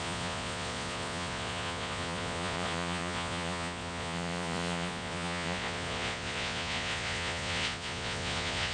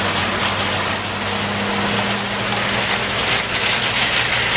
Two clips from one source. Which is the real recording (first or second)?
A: second